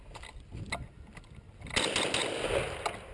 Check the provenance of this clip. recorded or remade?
recorded